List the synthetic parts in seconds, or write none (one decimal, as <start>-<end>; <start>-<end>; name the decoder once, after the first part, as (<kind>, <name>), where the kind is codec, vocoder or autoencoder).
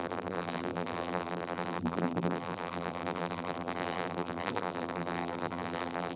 0.0-6.2 (vocoder, BigVGAN v2)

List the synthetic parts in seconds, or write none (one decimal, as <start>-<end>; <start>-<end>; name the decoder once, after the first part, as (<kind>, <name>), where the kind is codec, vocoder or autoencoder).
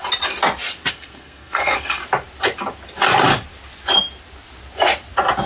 0.9-2.0 (codec, SNAC)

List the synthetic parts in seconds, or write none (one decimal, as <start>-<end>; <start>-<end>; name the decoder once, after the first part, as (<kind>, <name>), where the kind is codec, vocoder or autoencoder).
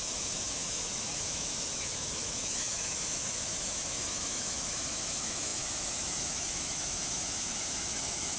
0.0-8.4 (autoencoder, DAC-VAE)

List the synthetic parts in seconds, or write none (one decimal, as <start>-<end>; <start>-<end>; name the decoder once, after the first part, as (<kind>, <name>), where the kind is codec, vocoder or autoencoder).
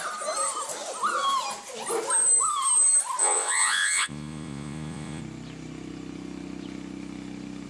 3.2-5.2 (vocoder, Vocos)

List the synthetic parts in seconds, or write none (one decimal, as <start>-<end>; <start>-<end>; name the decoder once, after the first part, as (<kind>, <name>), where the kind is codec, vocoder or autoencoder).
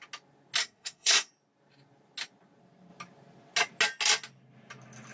0.6-1.3 (codec, SNAC)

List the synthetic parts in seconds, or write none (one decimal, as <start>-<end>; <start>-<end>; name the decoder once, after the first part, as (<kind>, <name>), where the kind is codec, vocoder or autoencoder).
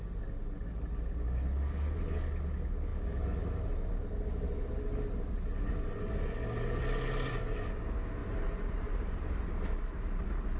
8.2-9.5 (vocoder, BigVGAN v2)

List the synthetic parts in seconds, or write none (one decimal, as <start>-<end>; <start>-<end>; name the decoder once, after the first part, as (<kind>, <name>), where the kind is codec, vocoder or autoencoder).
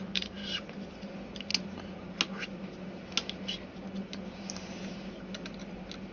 none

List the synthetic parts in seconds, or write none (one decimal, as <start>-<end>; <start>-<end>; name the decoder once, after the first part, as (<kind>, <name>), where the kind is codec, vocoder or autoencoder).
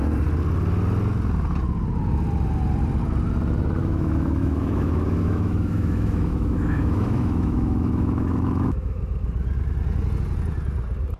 3.8-9.0 (autoencoder, DAC-VAE)